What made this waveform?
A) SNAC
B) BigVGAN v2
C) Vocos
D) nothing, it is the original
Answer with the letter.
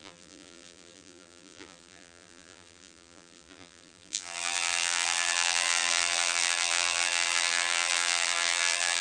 B